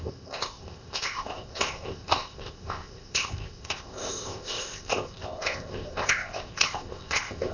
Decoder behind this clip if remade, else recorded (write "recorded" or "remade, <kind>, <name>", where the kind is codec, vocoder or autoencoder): remade, codec, ZipCodec